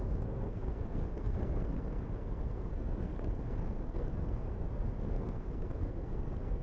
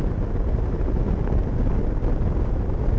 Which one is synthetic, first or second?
first